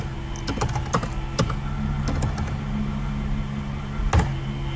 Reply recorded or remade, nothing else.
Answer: recorded